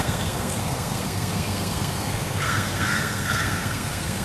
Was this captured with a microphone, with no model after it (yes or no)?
no